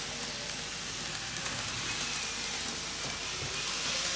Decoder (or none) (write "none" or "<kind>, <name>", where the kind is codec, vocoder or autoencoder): none